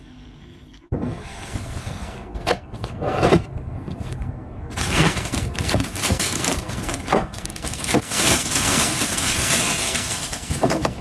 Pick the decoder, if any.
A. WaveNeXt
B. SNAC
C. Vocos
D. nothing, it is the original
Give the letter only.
B